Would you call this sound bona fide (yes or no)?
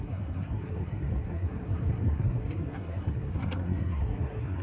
no